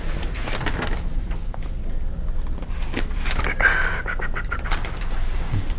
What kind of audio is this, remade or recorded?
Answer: recorded